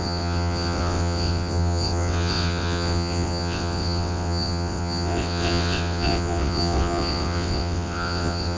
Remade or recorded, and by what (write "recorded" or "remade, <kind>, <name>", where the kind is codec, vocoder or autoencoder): remade, vocoder, WaveNeXt